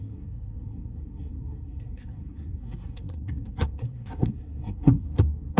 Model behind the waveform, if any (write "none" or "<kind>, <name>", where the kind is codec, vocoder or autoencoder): codec, SNAC